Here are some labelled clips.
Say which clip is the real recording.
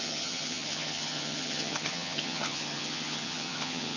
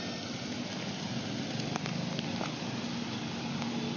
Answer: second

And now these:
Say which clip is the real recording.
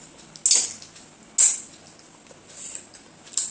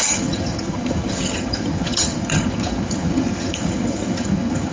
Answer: first